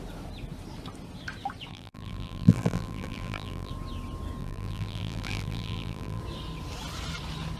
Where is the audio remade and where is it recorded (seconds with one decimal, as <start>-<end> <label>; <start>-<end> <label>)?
0.0-1.7 recorded; 1.7-3.7 remade; 3.7-4.4 recorded; 4.4-6.2 remade; 6.2-7.6 recorded